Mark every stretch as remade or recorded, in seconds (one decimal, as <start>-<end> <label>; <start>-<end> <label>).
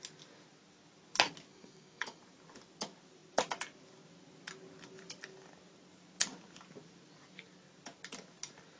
0.0-1.5 recorded; 1.5-2.2 remade; 2.2-8.8 recorded